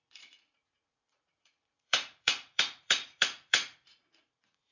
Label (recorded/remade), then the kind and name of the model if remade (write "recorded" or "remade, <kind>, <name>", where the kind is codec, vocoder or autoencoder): remade, vocoder, Vocos